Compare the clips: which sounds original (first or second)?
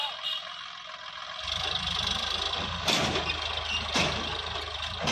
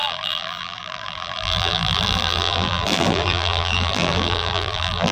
first